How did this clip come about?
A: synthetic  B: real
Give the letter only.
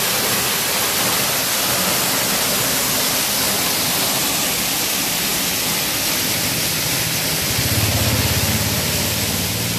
B